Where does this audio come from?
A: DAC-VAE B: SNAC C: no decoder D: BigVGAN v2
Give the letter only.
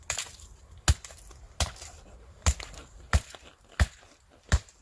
C